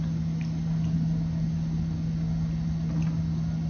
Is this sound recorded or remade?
recorded